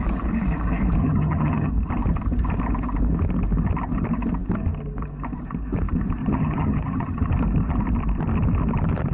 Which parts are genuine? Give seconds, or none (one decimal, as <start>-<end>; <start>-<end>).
0.0-1.0; 1.7-6.2; 7.3-9.1